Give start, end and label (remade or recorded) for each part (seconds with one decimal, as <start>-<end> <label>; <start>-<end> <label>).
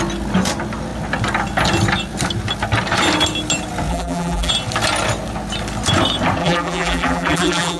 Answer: 0.0-3.9 recorded; 3.9-4.5 remade; 4.5-6.4 recorded; 6.4-7.8 remade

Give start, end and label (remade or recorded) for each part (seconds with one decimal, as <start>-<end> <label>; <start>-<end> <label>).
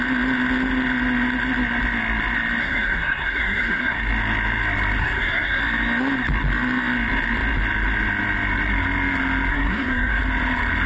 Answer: 0.0-2.6 recorded; 2.6-4.0 remade; 4.0-5.0 recorded; 5.0-5.6 remade; 5.6-9.5 recorded; 9.5-10.2 remade; 10.2-10.9 recorded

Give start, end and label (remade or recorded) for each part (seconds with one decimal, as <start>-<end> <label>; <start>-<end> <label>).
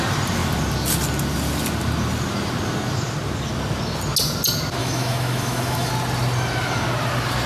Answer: 0.0-4.8 recorded; 4.8-5.9 remade; 5.9-7.5 recorded